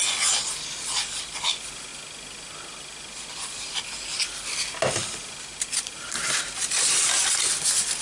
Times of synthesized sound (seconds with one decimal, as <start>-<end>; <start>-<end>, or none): none